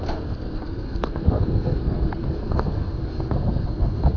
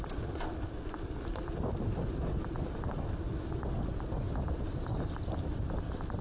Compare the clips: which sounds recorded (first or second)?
second